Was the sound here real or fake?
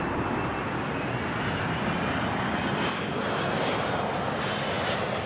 real